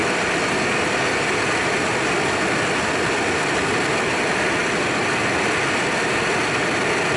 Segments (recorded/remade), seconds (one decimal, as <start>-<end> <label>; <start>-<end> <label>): 0.0-7.2 recorded

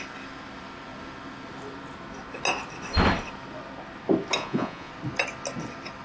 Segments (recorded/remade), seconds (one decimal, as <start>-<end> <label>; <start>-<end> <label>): 0.0-4.4 recorded; 4.4-4.9 remade; 4.9-6.0 recorded